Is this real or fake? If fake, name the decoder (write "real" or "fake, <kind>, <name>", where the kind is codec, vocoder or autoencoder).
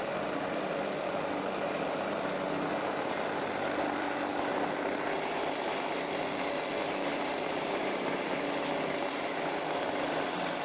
real